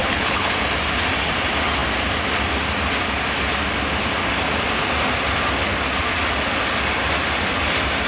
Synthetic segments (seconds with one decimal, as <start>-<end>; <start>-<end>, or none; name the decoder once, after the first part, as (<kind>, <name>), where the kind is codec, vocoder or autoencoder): 0.0-0.5 (codec, HILCodec)